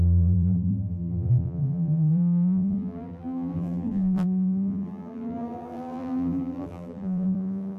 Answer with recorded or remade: remade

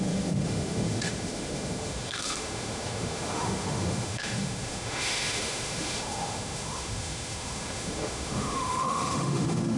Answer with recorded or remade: remade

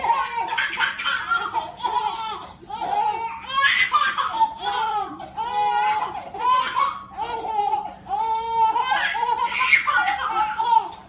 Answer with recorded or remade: recorded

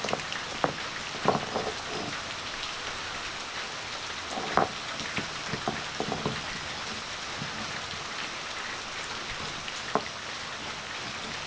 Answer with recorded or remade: recorded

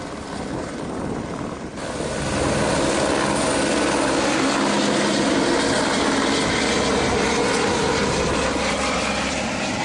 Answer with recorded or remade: recorded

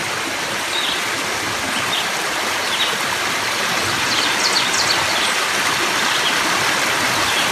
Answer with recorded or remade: recorded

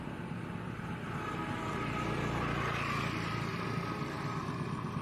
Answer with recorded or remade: recorded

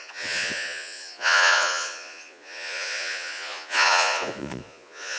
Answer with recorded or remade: remade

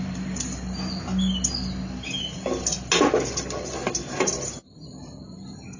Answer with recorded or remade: recorded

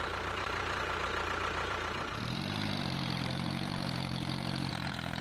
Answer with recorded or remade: remade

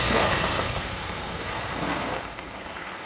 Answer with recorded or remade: remade